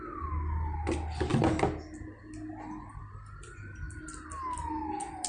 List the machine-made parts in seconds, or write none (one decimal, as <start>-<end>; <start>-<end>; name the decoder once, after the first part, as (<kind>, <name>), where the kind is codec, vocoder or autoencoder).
none